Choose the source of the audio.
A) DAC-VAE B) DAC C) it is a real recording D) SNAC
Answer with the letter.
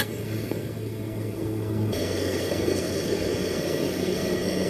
D